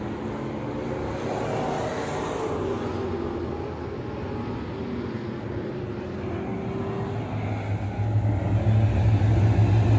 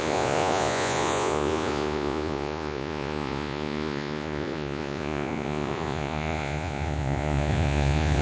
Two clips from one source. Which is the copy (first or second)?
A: second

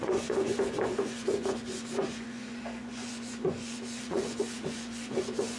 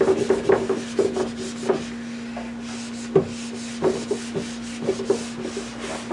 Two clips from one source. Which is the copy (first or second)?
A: first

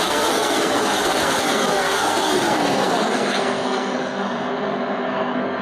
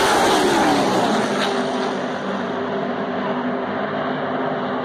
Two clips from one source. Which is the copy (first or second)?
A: first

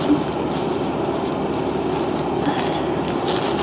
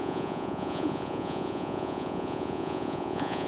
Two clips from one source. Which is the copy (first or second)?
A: second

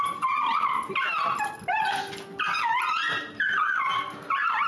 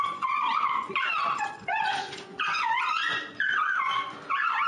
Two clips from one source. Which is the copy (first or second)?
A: second